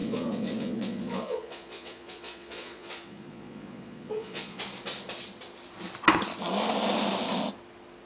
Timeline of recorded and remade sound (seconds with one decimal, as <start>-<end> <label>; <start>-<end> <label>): 0.0-4.6 remade; 4.6-8.1 recorded